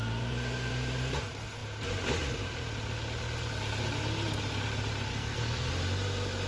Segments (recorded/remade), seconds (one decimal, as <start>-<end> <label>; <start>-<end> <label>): 0.0-5.1 recorded; 5.1-5.7 remade; 5.7-6.5 recorded